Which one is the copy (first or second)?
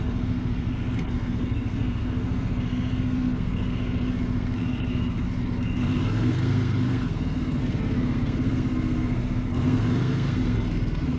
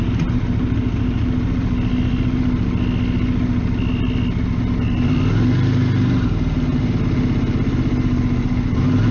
first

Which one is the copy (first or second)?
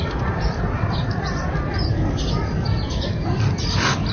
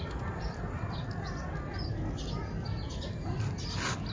first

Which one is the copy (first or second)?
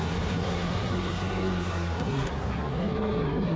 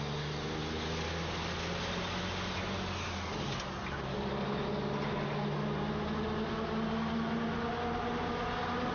first